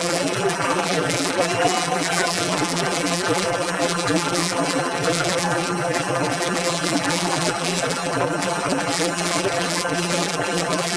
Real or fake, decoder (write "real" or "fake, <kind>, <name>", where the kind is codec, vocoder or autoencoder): fake, vocoder, BigVGAN v2